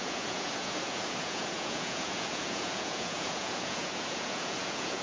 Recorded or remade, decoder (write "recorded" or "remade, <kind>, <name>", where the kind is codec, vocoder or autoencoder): remade, vocoder, Vocos